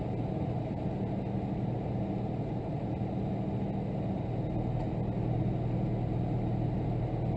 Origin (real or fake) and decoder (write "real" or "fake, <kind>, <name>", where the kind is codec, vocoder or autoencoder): real